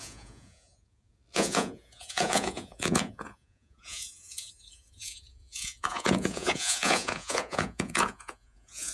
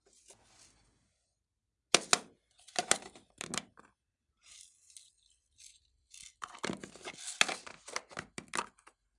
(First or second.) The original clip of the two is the second